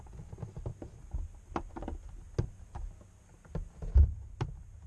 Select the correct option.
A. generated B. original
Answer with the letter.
B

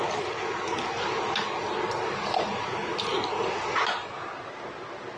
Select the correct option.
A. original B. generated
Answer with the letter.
A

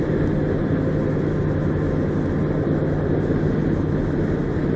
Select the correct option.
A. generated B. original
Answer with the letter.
B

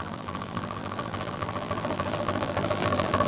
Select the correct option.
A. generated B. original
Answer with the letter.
A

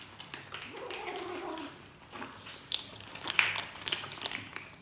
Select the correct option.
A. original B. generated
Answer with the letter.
A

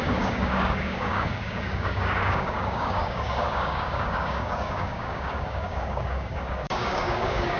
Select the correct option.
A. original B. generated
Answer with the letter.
B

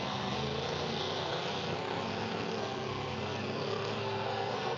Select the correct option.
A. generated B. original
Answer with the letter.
A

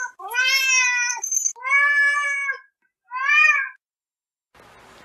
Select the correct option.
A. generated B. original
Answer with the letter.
B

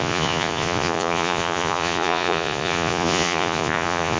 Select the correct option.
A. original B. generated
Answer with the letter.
B